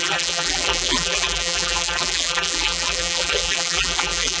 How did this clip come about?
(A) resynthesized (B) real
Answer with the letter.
A